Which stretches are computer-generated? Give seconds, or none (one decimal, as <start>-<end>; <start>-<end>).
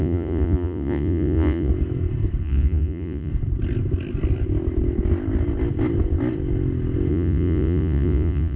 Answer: 0.0-1.7; 2.4-3.3; 7.1-8.6